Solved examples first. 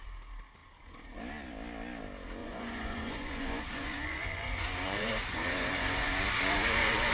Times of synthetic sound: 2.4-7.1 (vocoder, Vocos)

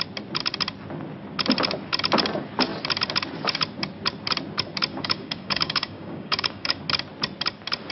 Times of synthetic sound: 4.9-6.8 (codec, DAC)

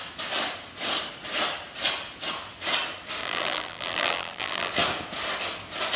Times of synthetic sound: 3.2-4.7 (vocoder, BigVGAN v2)

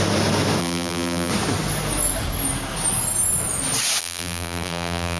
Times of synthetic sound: 0.6-1.3 (vocoder, BigVGAN v2); 4.0-5.2

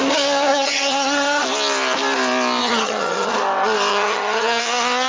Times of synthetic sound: 0.5-1.4 (vocoder, HiFi-GAN); 2.6-3.3; 3.9-4.6

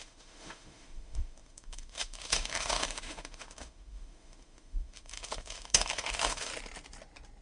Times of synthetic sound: 0.0-6.5 (autoencoder, DAC-VAE)

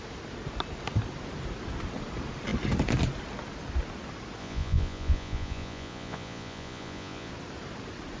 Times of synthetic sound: 4.4-7.3 (vocoder, Vocos)